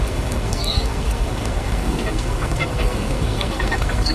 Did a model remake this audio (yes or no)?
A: yes